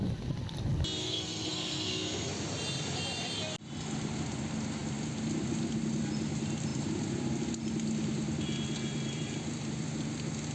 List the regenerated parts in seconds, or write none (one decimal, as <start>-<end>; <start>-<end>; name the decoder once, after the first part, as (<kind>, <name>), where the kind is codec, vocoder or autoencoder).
1.0-2.3 (codec, SNAC)